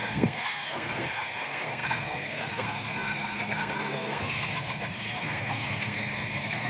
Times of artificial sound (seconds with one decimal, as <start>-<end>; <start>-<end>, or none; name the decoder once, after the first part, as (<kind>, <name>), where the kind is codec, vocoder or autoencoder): 0.0-6.7 (codec, SNAC)